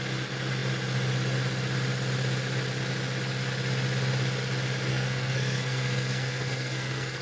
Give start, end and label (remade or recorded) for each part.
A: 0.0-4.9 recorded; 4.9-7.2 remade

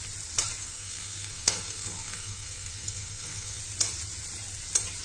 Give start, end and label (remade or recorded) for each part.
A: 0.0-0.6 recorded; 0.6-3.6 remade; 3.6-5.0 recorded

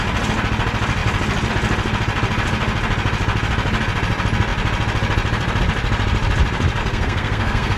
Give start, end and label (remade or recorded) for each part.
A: 0.0-6.8 recorded; 6.8-7.8 remade

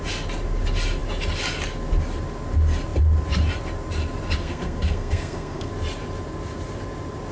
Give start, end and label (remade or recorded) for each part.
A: 0.0-4.4 recorded; 4.4-5.7 remade; 5.7-7.3 recorded

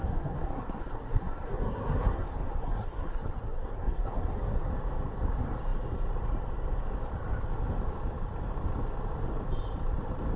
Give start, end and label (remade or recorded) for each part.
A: 0.0-4.7 remade; 4.7-10.4 recorded

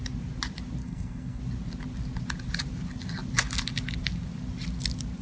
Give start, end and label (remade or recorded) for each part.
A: 0.0-0.8 recorded; 0.8-1.4 remade; 1.4-5.2 recorded

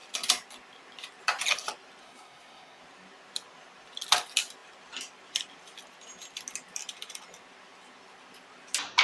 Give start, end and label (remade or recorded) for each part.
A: 0.0-2.0 recorded; 2.0-2.8 remade; 2.8-9.0 recorded